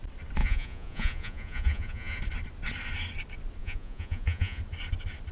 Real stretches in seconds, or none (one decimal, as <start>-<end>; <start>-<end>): 0.0-0.4; 2.2-3.6; 4.6-5.3